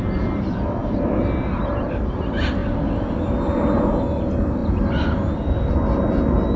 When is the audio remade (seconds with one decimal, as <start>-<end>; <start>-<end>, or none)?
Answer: 0.8-2.0